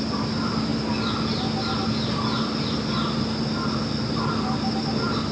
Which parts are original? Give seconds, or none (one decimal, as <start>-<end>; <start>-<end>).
0.0-5.3